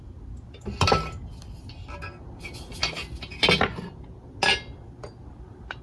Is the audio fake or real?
real